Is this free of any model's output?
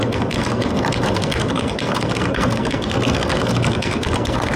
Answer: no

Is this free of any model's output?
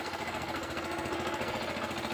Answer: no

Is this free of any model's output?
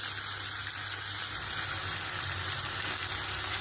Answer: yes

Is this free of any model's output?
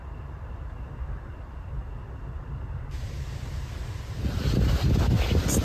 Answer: yes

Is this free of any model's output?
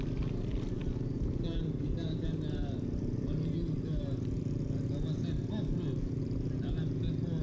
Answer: yes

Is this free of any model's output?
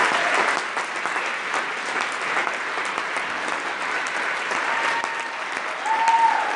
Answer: yes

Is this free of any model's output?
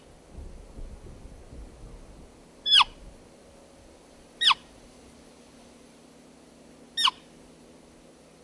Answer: yes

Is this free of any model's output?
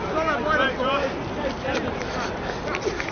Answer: yes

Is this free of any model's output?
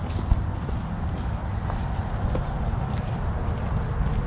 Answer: yes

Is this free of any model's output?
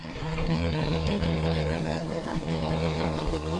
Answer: no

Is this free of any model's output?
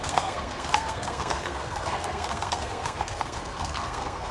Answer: no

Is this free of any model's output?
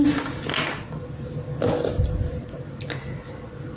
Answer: yes